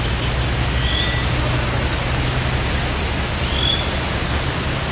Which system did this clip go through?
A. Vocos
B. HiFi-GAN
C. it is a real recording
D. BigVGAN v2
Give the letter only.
C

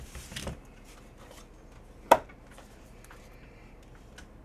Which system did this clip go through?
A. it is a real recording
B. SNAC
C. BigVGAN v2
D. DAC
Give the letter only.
A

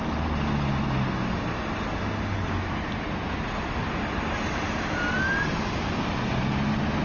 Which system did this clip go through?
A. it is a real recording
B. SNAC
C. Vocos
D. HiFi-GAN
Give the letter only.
A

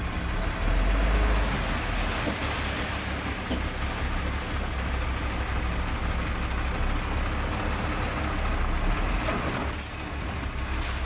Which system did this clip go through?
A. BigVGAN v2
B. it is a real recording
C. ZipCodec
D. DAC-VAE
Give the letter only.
B